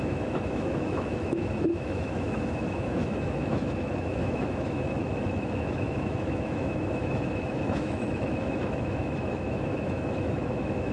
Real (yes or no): no